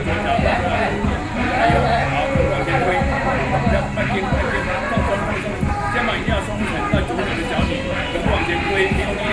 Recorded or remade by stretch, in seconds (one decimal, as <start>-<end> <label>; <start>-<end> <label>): 0.0-8.1 recorded; 8.1-9.3 remade